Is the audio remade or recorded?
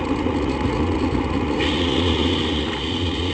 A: remade